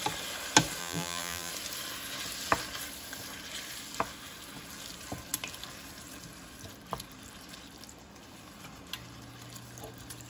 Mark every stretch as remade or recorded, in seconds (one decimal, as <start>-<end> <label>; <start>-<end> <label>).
0.0-0.8 recorded; 0.8-1.5 remade; 1.5-10.3 recorded